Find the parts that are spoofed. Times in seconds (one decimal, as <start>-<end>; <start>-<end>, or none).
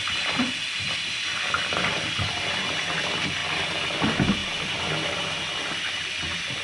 none